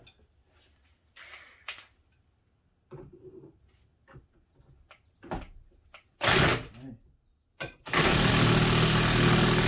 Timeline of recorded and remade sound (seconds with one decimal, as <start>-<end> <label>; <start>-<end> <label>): 0.0-9.7 recorded